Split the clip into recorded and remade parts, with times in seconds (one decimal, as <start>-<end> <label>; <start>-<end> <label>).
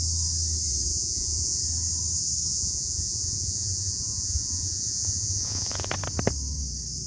0.0-0.9 recorded; 0.9-1.6 remade; 1.6-2.5 recorded; 2.5-5.9 remade; 5.9-7.1 recorded